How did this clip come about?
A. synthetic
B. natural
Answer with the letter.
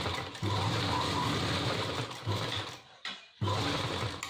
B